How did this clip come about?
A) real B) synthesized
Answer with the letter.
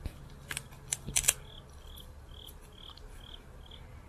A